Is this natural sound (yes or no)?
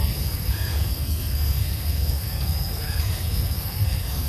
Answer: no